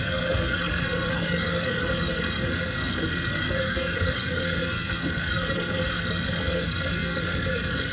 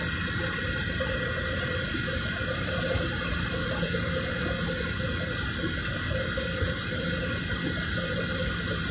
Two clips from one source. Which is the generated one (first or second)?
first